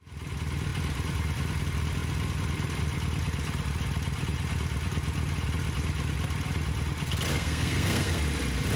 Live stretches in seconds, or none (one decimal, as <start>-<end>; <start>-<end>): 0.0-7.3; 8.2-8.8